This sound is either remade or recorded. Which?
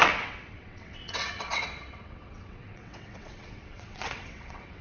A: remade